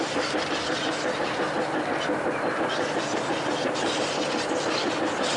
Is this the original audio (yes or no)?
yes